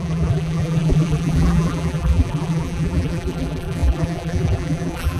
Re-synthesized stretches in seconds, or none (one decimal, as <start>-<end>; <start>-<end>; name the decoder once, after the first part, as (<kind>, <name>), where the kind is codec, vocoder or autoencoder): 0.0-5.2 (vocoder, BigVGAN v2)